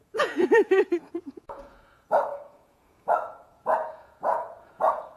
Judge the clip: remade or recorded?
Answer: remade